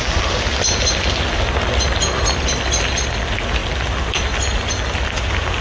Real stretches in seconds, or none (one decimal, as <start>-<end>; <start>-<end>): 0.0-5.6